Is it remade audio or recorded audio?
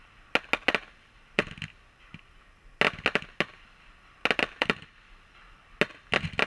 recorded